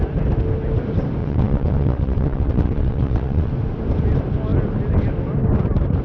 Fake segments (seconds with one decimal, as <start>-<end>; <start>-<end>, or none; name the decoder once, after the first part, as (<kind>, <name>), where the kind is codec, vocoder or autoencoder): 1.2-3.5 (vocoder, WaveNeXt)